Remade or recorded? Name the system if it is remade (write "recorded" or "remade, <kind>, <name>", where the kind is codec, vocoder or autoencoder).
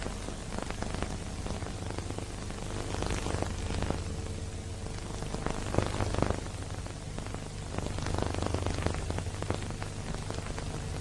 recorded